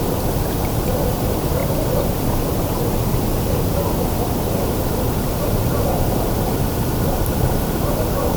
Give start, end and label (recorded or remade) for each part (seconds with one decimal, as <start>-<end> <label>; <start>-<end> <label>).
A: 0.0-1.6 remade; 1.6-5.4 recorded; 5.4-8.4 remade